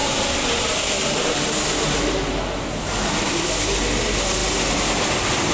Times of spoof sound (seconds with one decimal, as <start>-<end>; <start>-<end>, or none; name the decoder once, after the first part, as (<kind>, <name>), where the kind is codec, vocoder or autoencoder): none